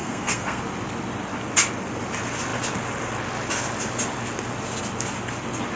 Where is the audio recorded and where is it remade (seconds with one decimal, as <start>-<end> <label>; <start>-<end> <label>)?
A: 0.0-0.6 remade; 0.6-5.8 recorded